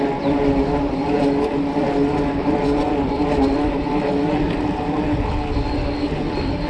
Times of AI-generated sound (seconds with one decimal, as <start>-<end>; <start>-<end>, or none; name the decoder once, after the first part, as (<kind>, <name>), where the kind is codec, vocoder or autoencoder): none